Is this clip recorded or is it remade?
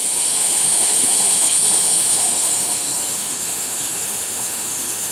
remade